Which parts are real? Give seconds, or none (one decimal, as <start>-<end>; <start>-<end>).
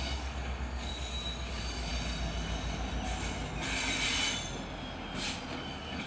0.9-1.5; 1.9-5.6